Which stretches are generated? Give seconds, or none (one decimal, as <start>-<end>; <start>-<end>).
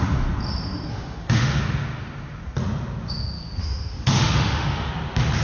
0.9-1.6; 3.6-4.9